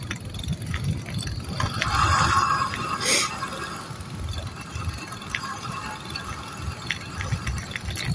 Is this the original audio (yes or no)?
yes